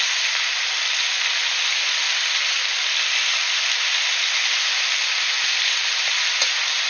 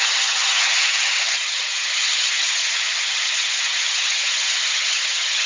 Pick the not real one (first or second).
second